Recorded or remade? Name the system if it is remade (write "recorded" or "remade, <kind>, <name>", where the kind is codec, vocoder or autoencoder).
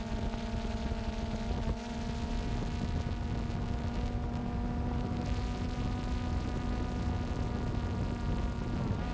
recorded